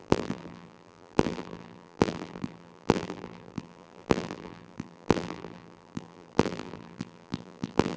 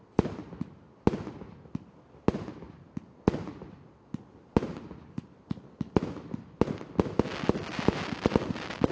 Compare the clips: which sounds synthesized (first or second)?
first